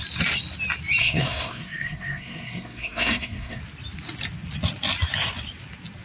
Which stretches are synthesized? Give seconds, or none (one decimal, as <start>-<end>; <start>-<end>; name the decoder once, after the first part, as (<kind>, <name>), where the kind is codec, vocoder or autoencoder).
1.0-3.6 (codec, SNAC)